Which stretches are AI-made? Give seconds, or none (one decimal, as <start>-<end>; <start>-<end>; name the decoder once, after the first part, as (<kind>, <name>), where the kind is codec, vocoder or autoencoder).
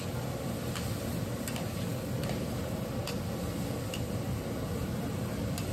none